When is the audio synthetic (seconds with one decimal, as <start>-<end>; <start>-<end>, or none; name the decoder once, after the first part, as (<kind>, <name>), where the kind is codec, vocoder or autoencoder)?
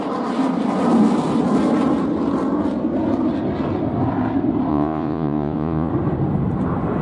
4.7-5.9 (vocoder, Vocos)